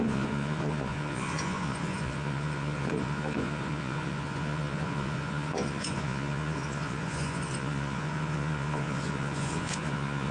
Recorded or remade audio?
remade